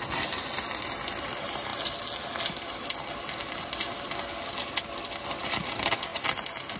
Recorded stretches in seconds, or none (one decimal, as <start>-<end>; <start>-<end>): 0.0-6.8